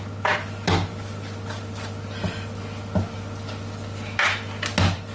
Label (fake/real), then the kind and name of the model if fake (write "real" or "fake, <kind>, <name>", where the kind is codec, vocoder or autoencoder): real